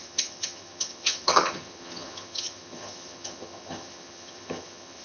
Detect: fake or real fake